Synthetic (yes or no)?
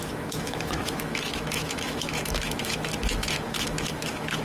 yes